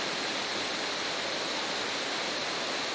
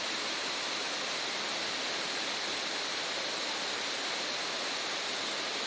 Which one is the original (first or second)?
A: first